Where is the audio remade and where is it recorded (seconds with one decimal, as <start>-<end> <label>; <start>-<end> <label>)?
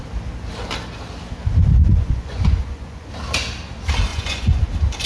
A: 0.0-1.8 recorded; 1.8-3.1 remade; 3.1-4.1 recorded; 4.1-4.6 remade; 4.6-5.1 recorded